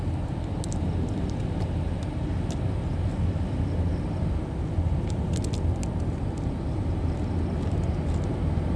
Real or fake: real